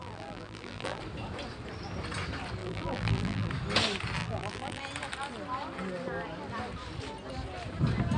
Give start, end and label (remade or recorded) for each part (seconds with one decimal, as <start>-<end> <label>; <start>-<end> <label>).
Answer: 0.0-1.0 remade; 1.0-2.6 recorded; 2.6-3.5 remade; 3.5-4.2 recorded; 4.2-4.8 remade; 4.8-8.2 recorded